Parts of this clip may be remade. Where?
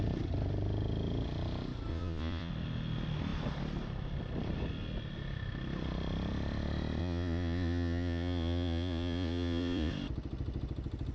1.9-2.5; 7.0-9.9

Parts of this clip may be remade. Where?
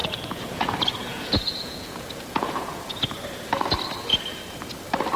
0.0-3.1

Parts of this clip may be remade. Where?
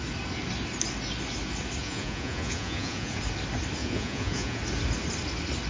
1.8-3.2; 3.8-4.6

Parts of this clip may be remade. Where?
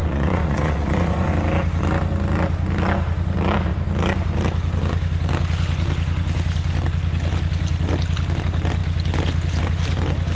0.0-1.3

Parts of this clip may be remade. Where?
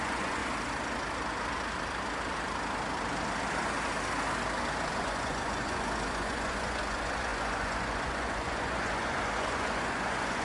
0.0-0.4; 4.9-10.4